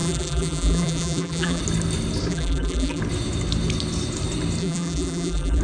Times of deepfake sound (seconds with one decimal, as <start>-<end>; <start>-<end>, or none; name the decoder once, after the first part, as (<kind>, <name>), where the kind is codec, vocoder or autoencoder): 0.0-1.6 (vocoder, BigVGAN v2); 2.3-3.0; 4.6-5.6